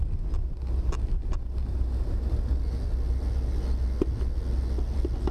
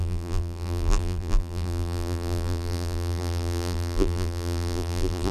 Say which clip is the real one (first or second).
first